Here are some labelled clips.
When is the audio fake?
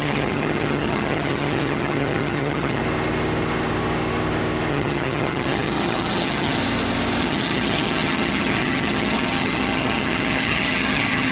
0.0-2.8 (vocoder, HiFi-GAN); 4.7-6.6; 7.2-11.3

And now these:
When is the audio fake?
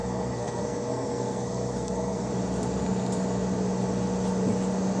0.0-2.3 (codec, SNAC)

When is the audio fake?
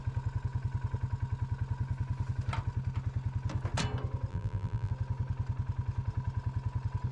4.3-4.9 (vocoder, BigVGAN v2)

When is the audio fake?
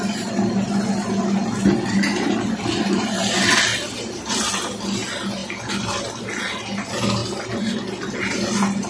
none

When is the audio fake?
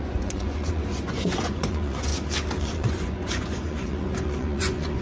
0.0-2.1 (vocoder, Vocos); 2.6-5.0